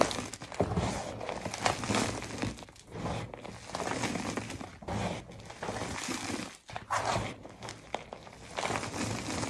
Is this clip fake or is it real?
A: real